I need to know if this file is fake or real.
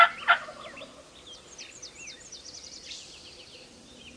real